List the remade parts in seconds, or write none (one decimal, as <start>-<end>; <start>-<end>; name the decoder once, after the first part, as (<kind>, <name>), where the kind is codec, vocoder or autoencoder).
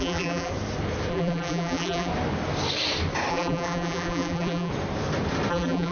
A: 0.0-0.5 (vocoder, BigVGAN v2); 1.1-2.1; 3.3-4.7; 5.5-5.9